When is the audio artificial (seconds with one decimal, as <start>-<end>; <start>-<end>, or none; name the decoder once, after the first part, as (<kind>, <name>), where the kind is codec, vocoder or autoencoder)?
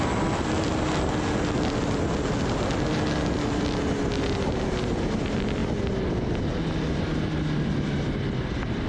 none